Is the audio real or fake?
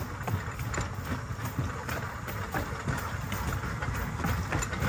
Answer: real